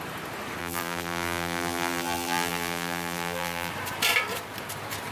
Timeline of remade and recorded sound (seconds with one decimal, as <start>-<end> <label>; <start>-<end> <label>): 0.0-0.6 recorded; 0.6-3.7 remade; 3.7-5.1 recorded